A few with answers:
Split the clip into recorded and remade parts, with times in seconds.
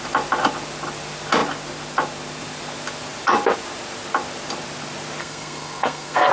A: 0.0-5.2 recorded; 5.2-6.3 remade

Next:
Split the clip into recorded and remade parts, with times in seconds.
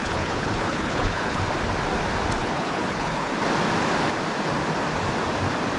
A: 0.0-1.4 remade; 1.4-2.4 recorded; 2.4-3.3 remade; 3.3-5.8 recorded